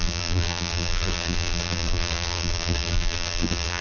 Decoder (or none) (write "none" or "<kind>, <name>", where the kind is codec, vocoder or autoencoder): vocoder, BigVGAN v2